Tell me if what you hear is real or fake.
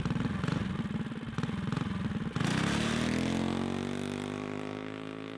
real